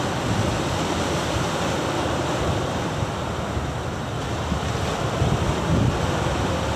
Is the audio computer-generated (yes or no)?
no